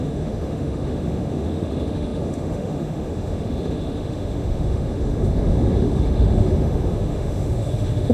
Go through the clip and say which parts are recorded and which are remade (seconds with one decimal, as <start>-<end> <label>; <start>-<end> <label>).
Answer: 0.0-8.1 remade